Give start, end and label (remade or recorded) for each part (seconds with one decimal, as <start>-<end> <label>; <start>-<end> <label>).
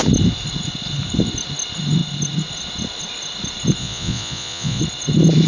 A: 0.0-3.8 recorded; 3.8-4.8 remade; 4.8-5.5 recorded